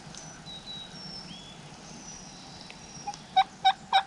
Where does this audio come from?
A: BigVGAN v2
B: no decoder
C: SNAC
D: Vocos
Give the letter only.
B